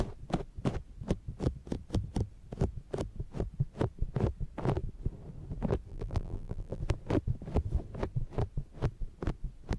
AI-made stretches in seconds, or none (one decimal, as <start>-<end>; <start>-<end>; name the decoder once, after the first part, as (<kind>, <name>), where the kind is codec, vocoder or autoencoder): 5.9-6.8 (vocoder, BigVGAN v2)